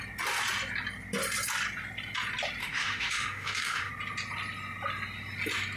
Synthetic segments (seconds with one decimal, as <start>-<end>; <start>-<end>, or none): 2.6-3.9

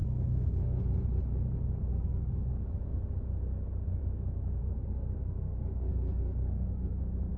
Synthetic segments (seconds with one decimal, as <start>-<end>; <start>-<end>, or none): 0.0-0.8; 1.9-2.5; 4.6-7.0

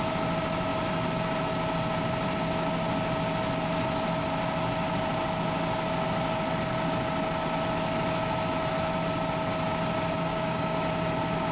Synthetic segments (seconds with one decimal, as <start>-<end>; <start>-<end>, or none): 10.3-10.9

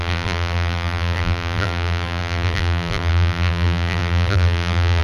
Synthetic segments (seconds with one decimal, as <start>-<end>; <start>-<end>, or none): 0.0-5.0

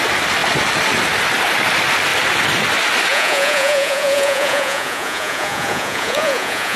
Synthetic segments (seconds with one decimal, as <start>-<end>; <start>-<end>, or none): 3.1-6.8

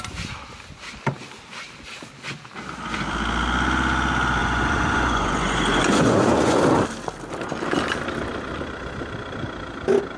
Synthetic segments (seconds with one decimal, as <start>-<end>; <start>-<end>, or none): 4.4-6.6